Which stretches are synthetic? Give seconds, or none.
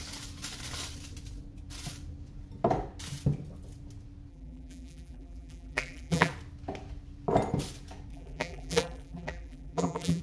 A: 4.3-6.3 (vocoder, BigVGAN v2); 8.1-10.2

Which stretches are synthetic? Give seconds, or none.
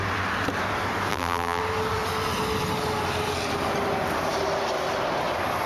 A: 1.1-1.6 (vocoder, BigVGAN v2)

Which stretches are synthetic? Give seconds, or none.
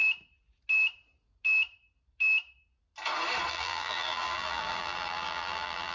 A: 3.5-5.9 (vocoder, BigVGAN v2)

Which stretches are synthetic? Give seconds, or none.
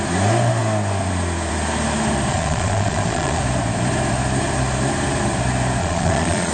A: 2.3-3.4 (vocoder, Vocos); 5.8-6.5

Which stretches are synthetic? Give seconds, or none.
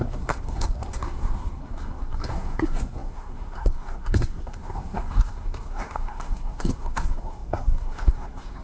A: 0.0-8.6 (codec, SNAC)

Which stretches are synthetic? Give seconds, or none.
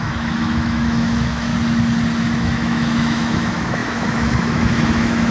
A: 0.0-1.5 (autoencoder, DAC-VAE); 2.2-5.3